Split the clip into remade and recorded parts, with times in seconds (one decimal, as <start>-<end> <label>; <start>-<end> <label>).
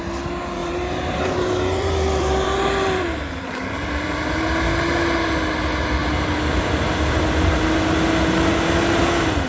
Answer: 0.0-0.6 recorded; 0.6-4.4 remade; 4.4-9.5 recorded